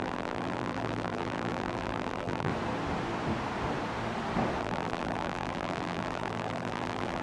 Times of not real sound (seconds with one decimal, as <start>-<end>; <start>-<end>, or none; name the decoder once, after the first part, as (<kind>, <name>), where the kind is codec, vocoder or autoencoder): 0.0-2.5 (vocoder, BigVGAN v2); 4.6-7.2